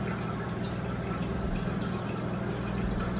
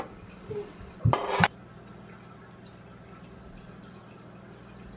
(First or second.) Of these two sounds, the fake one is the first